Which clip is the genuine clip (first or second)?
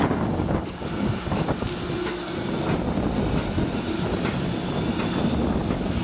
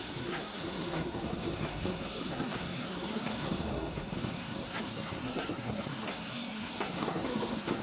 first